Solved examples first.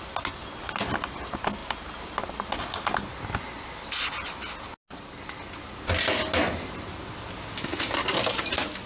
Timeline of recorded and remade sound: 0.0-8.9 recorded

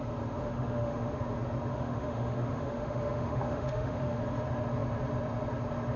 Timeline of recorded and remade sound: 0.0-0.4 recorded; 0.4-1.2 remade; 1.2-1.7 recorded; 1.7-4.2 remade; 4.2-6.0 recorded

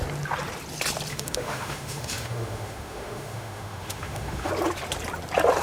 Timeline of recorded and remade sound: 0.0-1.1 recorded; 1.1-4.5 remade; 4.5-5.6 recorded